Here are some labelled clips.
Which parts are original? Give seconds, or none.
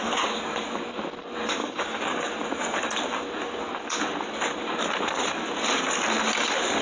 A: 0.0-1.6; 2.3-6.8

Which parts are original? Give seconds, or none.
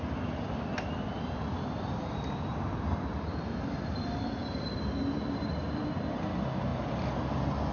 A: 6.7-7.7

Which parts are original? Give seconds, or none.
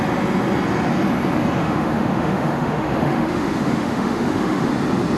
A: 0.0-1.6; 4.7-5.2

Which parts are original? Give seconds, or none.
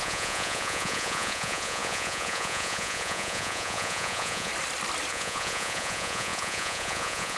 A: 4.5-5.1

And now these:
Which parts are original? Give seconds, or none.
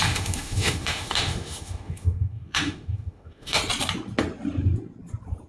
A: 3.6-5.5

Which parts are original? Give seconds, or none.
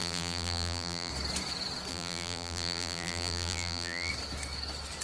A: 1.1-1.9; 4.1-5.0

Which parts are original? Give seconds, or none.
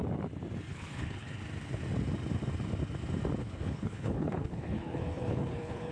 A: 0.0-0.7; 1.4-3.4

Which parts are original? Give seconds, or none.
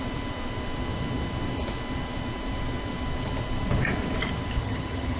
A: 0.0-4.6